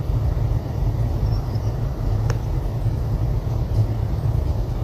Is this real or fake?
real